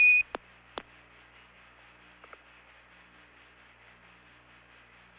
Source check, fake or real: real